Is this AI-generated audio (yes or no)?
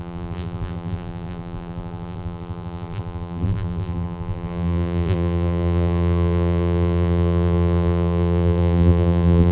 yes